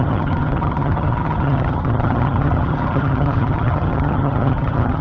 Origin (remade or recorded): remade